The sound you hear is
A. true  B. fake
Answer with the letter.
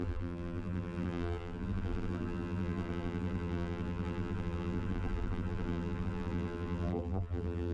B